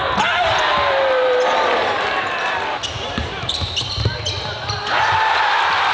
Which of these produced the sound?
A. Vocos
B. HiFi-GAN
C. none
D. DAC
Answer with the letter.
C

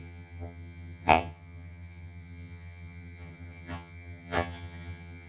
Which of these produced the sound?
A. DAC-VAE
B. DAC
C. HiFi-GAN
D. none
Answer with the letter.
C